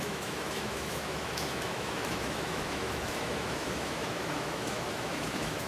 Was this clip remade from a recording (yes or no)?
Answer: yes